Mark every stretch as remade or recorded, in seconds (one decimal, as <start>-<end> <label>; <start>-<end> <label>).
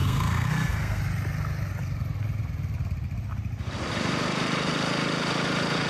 0.0-1.0 remade; 1.0-5.9 recorded